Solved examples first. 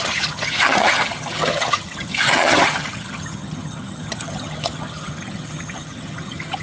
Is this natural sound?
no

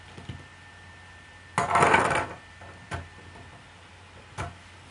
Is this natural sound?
yes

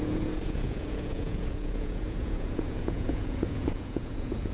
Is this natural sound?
no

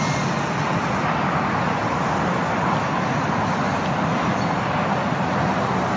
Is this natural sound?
yes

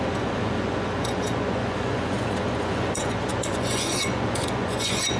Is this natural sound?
no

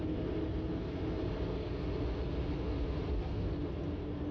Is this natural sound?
yes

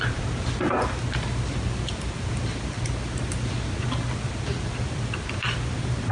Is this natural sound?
yes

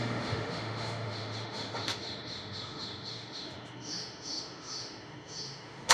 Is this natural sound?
no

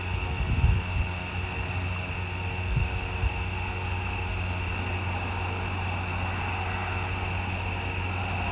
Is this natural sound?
yes